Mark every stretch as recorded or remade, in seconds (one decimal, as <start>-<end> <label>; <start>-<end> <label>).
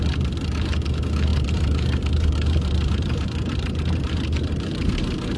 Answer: 0.0-1.3 recorded; 1.3-4.5 remade; 4.5-5.4 recorded